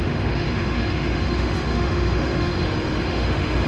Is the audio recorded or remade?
remade